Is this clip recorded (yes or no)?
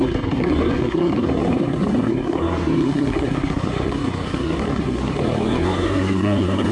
no